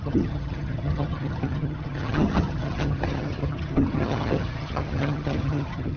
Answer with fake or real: fake